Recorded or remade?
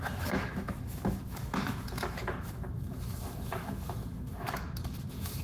remade